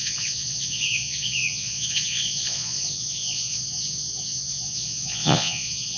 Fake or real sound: fake